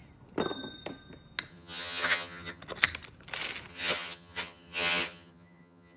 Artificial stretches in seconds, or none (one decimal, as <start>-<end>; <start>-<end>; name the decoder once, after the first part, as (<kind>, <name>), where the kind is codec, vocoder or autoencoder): 1.5-2.6 (vocoder, HiFi-GAN); 3.7-6.0